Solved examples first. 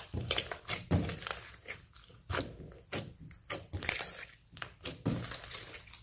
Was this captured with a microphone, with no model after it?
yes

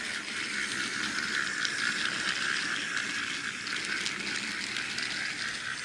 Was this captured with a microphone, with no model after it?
yes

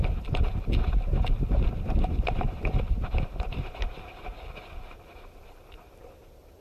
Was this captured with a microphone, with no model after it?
yes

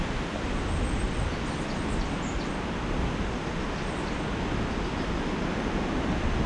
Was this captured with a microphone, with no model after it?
yes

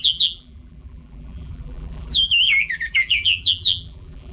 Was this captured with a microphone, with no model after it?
no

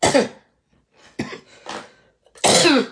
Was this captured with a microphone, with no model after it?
yes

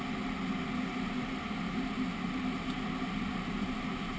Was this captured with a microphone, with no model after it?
yes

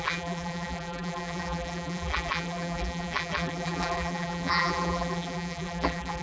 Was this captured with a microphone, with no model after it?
no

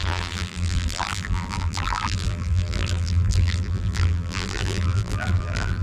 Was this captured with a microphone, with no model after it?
no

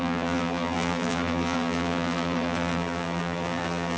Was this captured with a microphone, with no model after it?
no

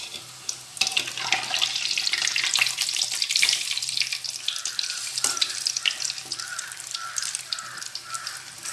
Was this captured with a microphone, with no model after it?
no